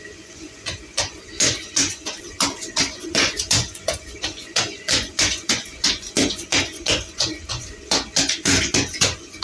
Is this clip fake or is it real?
fake